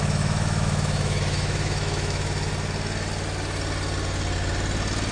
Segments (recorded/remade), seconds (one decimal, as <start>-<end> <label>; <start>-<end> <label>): 0.0-2.5 remade; 2.5-5.1 recorded